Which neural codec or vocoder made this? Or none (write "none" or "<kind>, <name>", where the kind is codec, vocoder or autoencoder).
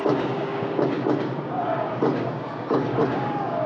codec, DAC